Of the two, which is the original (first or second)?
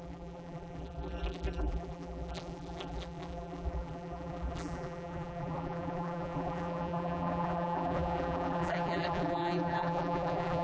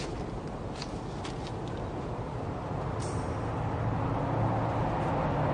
second